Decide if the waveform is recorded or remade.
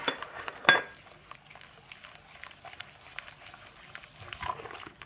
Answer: recorded